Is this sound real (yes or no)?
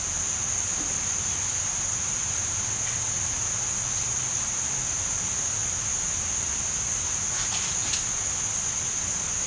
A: yes